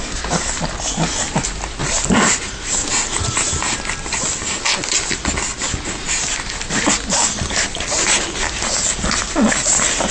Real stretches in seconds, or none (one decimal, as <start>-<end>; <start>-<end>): 0.0-1.8; 3.5-10.1